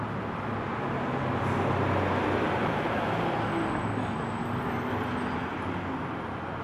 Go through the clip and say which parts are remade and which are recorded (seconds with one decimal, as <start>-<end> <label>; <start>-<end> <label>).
0.0-2.6 recorded; 2.6-3.1 remade; 3.1-6.6 recorded